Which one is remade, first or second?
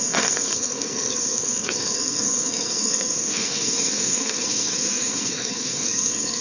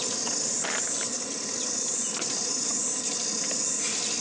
first